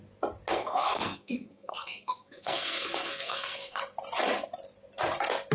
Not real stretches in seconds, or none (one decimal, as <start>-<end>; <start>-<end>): 0.5-3.8